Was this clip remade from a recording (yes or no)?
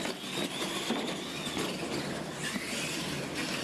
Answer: no